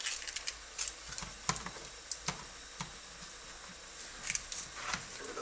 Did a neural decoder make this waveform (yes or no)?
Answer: no